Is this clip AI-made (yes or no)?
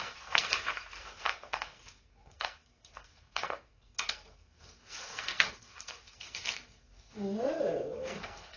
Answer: yes